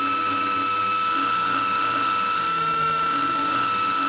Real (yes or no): no